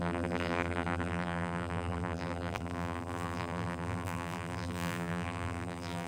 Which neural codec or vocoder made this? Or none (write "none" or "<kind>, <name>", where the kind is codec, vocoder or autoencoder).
vocoder, BigVGAN v2